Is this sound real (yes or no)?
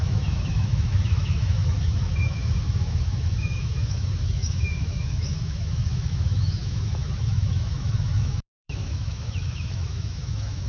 no